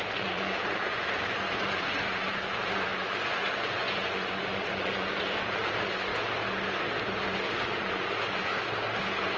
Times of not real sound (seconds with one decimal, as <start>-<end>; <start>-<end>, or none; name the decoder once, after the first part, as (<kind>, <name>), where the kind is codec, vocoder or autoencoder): 0.0-6.1 (vocoder, Vocos); 7.5-8.5